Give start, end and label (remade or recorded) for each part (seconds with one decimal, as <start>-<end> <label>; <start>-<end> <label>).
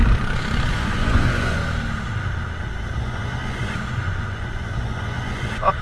0.0-0.7 recorded; 0.7-1.6 remade; 1.6-3.0 recorded; 3.0-5.8 remade